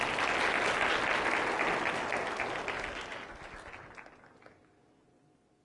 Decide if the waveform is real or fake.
real